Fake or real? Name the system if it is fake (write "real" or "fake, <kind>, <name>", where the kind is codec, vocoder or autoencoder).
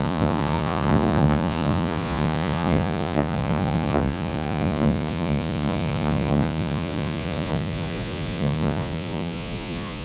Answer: fake, vocoder, Vocos